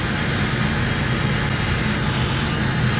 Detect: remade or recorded recorded